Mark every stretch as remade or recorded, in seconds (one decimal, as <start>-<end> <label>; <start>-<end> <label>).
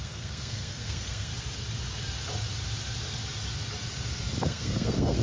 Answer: 0.0-1.3 remade; 1.3-4.4 recorded; 4.4-5.2 remade